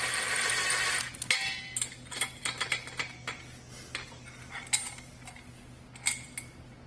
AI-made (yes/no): no